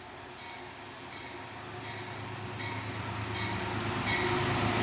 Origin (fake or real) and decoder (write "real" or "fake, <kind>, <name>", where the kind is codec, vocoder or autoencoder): real